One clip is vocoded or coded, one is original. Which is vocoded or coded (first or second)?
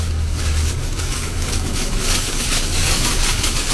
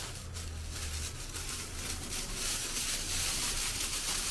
first